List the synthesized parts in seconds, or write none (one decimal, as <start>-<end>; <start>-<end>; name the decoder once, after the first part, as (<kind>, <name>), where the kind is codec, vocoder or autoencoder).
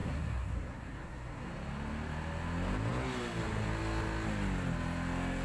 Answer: 0.0-1.5 (codec, SNAC)